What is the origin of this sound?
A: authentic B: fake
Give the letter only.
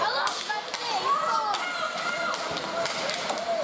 A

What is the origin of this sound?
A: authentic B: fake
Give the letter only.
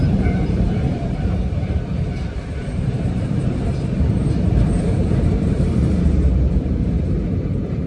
B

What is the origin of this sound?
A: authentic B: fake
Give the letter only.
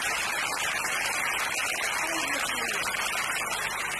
A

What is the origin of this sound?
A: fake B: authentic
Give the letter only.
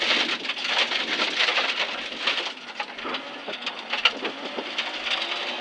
B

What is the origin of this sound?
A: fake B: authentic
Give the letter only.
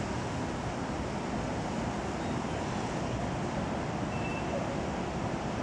A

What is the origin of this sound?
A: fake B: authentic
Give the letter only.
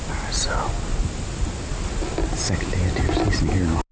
B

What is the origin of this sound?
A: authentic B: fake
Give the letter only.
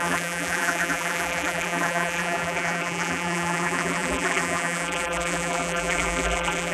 B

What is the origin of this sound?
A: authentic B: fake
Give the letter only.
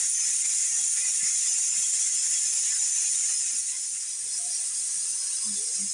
A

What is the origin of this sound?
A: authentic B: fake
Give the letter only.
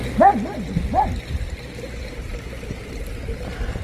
A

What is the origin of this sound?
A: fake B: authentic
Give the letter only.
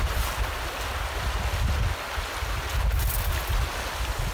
B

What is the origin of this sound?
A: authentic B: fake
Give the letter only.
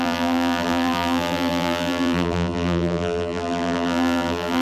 B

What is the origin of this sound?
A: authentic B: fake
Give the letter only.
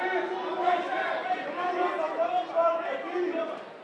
B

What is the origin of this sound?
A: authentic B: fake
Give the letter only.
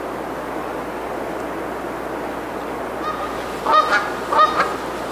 A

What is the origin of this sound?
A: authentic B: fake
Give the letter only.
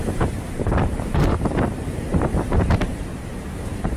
B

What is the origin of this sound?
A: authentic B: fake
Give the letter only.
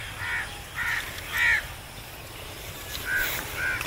A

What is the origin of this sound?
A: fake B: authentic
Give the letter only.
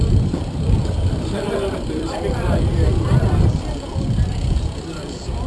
A